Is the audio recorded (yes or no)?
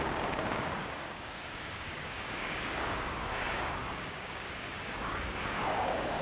no